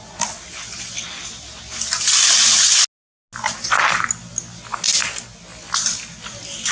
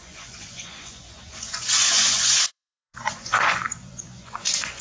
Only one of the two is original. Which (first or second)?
first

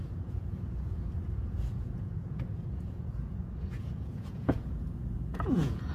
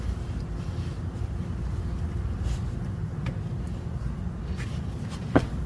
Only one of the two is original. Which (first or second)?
second